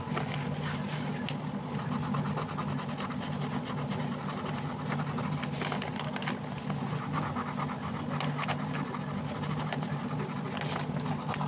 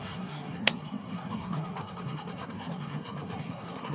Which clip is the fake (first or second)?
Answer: second